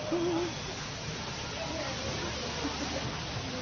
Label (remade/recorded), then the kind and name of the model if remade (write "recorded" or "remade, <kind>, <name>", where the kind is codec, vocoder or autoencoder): recorded